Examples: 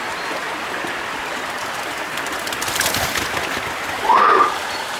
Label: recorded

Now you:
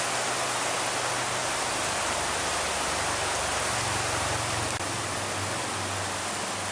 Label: recorded